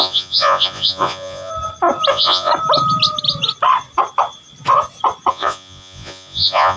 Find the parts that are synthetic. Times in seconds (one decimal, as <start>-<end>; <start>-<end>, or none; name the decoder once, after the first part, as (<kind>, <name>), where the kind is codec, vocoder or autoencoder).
0.0-1.5 (vocoder, Vocos); 2.1-2.5; 5.3-6.8